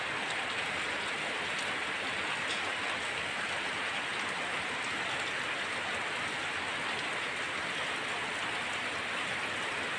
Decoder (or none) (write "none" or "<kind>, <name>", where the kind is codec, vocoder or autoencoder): none